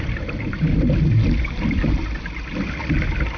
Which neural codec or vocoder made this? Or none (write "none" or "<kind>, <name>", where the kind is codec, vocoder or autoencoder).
none